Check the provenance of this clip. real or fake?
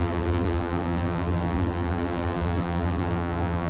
fake